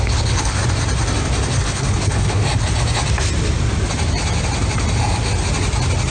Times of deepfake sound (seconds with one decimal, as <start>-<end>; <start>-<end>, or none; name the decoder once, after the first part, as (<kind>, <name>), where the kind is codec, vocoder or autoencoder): 0.0-0.6 (codec, HILCodec); 1.6-2.4